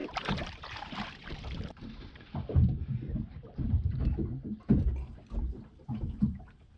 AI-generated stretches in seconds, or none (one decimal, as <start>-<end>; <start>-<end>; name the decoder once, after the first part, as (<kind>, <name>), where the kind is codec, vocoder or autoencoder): 0.0-4.1 (vocoder, BigVGAN v2); 4.8-6.8